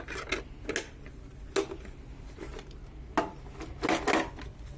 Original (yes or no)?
yes